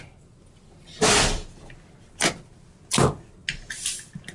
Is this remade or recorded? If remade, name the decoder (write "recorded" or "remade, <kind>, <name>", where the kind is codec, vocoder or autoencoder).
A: recorded